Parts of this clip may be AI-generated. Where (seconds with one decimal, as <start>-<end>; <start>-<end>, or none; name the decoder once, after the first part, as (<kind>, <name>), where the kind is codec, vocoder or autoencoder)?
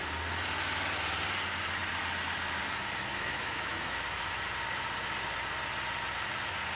3.1-4.0 (autoencoder, DAC-VAE)